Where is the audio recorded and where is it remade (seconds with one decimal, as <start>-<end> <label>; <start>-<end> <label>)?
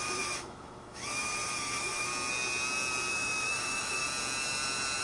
0.0-2.1 remade; 2.1-3.1 recorded; 3.1-4.0 remade; 4.0-5.0 recorded